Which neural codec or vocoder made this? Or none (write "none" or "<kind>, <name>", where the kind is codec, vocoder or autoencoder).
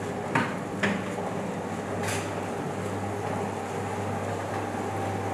none